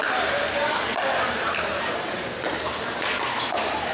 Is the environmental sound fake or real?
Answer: real